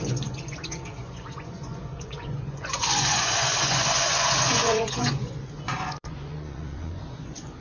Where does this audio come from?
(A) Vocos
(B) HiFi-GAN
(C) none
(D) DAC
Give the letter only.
A